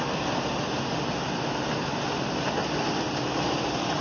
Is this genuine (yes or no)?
yes